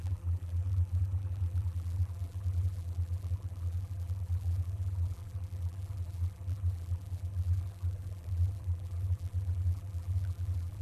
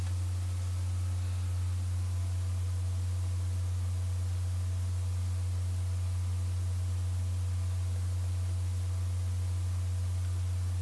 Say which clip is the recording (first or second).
second